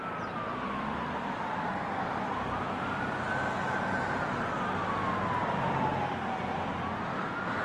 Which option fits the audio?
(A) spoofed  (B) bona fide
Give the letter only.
B